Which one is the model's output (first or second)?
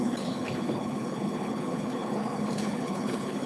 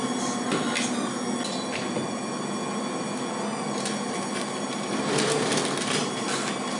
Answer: first